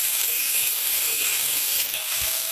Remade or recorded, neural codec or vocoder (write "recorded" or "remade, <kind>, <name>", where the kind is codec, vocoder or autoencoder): remade, codec, DAC